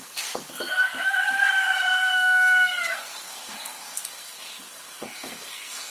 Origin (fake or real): fake